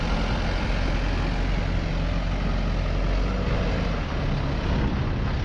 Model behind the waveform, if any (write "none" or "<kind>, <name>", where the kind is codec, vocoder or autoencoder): none